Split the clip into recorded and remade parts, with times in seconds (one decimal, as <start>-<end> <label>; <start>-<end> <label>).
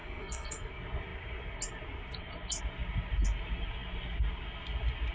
0.0-0.7 remade; 0.7-5.1 recorded